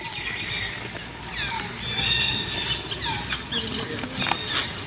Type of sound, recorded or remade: recorded